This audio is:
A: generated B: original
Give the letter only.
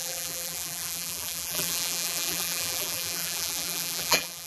A